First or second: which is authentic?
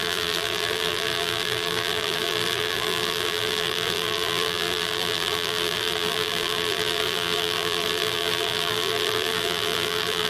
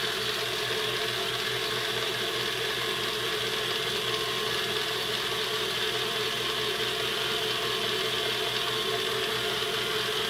second